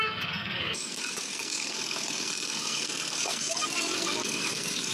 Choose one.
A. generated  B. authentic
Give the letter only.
A